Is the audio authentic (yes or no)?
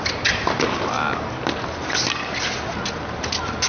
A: yes